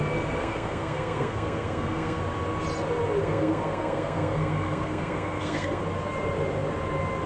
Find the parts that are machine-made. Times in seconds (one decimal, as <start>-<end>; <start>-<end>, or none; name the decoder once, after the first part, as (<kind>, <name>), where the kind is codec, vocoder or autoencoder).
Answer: 0.4-2.2 (codec, SNAC); 3.2-5.8